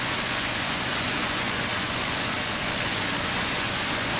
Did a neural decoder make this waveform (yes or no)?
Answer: yes